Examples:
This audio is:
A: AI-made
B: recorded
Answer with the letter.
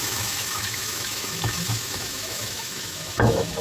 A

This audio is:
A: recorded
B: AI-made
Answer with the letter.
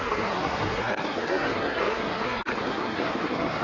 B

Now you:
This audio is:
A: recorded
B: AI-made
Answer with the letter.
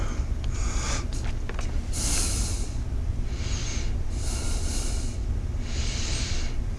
A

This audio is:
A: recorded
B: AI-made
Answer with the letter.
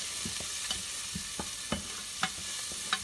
A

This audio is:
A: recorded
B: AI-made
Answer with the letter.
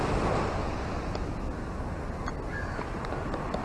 A